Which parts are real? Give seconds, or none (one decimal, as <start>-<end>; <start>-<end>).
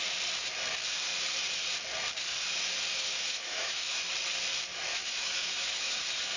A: 0.0-2.9; 4.0-4.9; 6.0-6.4